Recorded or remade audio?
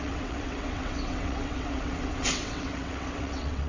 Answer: remade